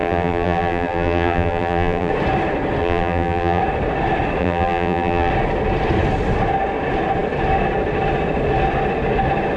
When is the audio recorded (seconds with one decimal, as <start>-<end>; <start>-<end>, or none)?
2.1-2.8; 3.6-4.4; 5.3-9.6